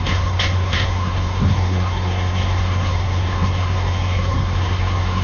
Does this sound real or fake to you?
fake